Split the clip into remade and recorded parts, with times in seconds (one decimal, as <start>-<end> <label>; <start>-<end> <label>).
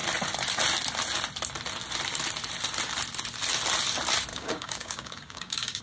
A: 0.0-4.3 recorded; 4.3-5.8 remade